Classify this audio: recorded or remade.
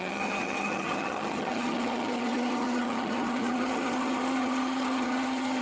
remade